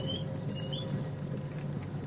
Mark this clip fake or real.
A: real